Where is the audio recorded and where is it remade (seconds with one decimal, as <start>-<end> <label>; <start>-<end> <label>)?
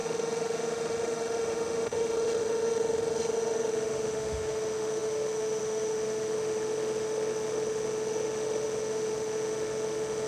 0.0-10.3 remade